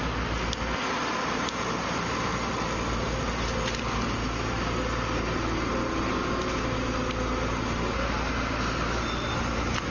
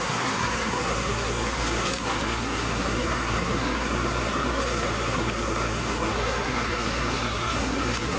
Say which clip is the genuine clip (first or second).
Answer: first